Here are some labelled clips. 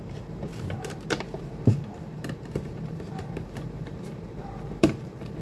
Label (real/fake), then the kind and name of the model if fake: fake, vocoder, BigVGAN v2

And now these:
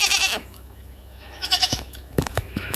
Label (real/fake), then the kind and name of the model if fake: fake, autoencoder, DAC-VAE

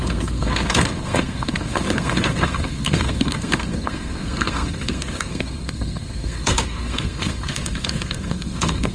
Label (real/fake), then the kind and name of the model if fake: fake, codec, SNAC